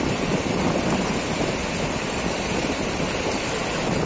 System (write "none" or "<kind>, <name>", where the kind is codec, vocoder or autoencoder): none